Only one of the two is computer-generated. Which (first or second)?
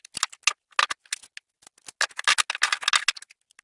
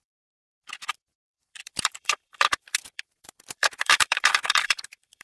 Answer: second